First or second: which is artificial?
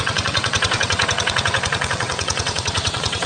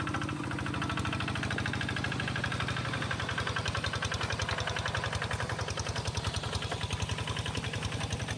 first